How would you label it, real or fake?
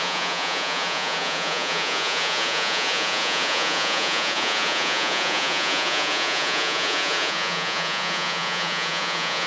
fake